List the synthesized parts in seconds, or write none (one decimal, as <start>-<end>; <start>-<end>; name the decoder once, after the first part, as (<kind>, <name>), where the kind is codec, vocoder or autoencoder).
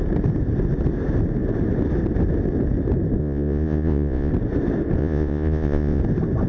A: 3.2-4.3 (vocoder, Vocos); 5.0-6.0